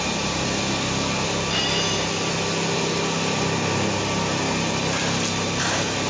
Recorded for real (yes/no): yes